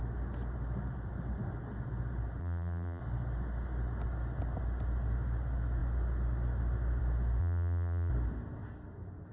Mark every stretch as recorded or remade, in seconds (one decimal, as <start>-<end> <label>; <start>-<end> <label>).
0.0-2.4 recorded; 2.4-3.0 remade; 3.0-7.4 recorded; 7.4-8.1 remade; 8.1-9.3 recorded